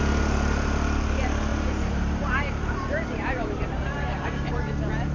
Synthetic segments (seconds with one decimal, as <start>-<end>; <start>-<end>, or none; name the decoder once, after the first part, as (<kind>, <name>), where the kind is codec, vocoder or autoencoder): 1.5-4.6 (vocoder, BigVGAN v2)